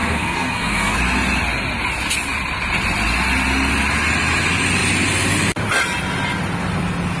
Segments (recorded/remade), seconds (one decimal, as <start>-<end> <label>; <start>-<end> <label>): 0.0-1.0 remade; 1.0-7.2 recorded